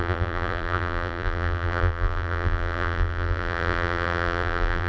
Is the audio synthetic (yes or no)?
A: yes